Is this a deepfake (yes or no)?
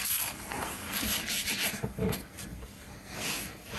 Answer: yes